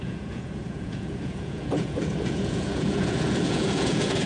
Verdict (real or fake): fake